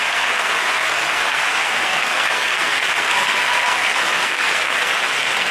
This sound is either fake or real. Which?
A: fake